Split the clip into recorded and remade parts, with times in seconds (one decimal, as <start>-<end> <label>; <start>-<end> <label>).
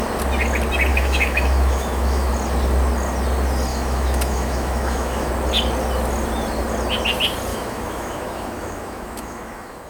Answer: 0.0-0.9 recorded; 0.9-2.3 remade; 2.3-3.7 recorded; 3.7-5.3 remade; 5.3-7.5 recorded; 7.5-9.9 remade